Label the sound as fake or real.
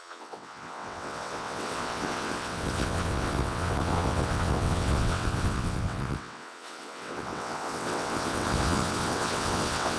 fake